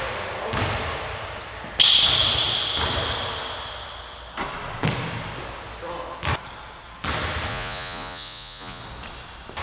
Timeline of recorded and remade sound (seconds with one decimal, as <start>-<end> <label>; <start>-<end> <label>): 0.0-7.5 recorded; 7.5-8.8 remade; 8.8-9.6 recorded